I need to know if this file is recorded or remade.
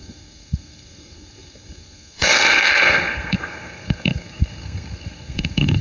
remade